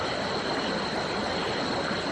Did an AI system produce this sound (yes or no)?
no